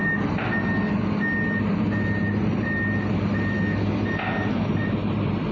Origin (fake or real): real